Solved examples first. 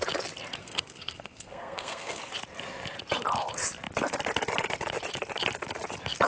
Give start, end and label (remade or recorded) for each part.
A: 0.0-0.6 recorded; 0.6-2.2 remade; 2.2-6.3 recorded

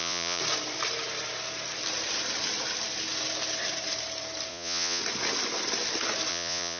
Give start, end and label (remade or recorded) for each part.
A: 0.0-0.4 remade; 0.4-4.5 recorded; 4.5-5.0 remade; 5.0-6.3 recorded; 6.3-6.8 remade

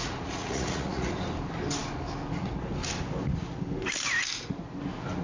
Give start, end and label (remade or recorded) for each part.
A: 0.0-1.1 remade; 1.1-5.2 recorded

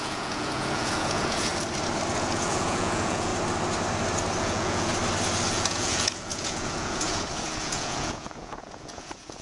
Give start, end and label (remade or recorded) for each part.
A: 0.0-1.5 remade; 1.5-2.1 recorded; 2.1-3.3 remade; 3.3-4.4 recorded; 4.4-4.9 remade; 4.9-5.5 recorded; 5.5-9.4 remade

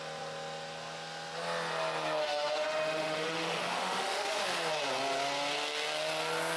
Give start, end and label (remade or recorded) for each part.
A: 0.0-2.2 recorded; 2.2-4.4 remade; 4.4-6.6 recorded